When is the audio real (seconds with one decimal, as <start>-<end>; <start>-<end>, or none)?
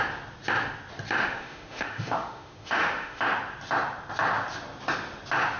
0.0-1.2; 3.2-5.6